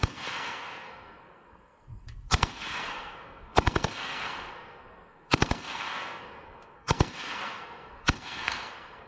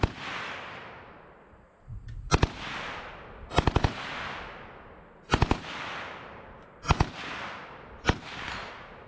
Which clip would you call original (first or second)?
second